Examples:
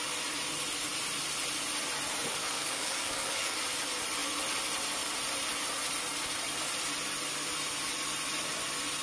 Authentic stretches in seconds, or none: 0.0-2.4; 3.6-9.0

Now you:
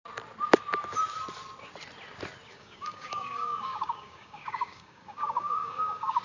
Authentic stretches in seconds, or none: 0.0-2.5